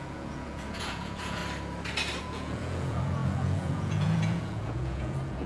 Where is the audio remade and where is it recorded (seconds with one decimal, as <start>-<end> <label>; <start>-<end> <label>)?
0.0-1.4 remade; 1.4-2.2 recorded; 2.2-5.5 remade